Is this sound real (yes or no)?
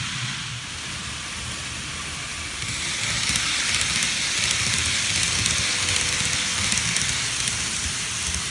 yes